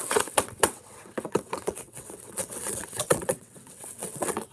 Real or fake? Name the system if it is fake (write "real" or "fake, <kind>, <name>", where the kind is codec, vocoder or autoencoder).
fake, vocoder, WaveNeXt